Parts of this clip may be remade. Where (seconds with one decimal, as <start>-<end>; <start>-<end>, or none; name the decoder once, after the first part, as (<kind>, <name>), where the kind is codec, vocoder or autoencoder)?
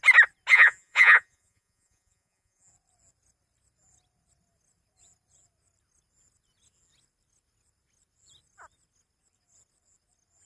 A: 0.5-2.7 (vocoder, Vocos)